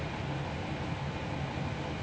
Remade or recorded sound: recorded